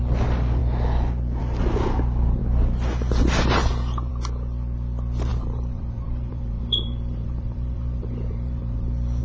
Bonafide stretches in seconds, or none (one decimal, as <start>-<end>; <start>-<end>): 0.0-5.3